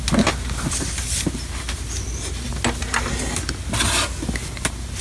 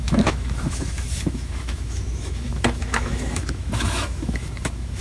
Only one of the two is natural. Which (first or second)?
first